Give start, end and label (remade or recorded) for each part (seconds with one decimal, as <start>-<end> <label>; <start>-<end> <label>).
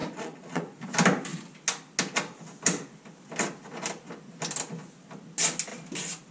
0.0-0.8 remade; 0.8-6.3 recorded